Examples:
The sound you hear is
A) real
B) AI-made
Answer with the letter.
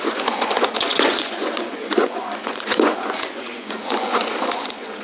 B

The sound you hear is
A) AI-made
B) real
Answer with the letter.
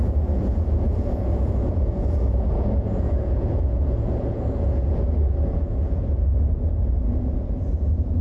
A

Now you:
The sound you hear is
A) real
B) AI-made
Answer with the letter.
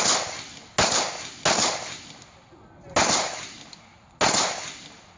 A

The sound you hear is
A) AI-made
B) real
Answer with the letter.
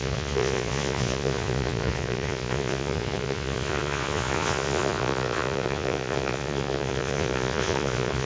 A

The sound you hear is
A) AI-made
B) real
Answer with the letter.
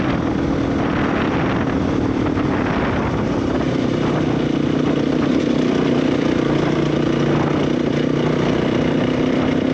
B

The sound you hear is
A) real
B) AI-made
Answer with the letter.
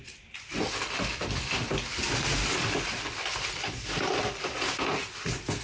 A